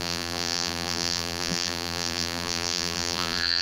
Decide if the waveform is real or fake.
fake